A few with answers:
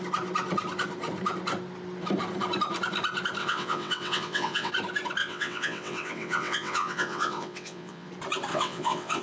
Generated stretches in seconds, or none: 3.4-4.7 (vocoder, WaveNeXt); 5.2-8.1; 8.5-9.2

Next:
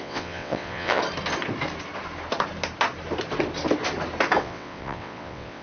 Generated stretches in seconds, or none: 0.0-1.0 (vocoder, WaveNeXt); 4.4-5.6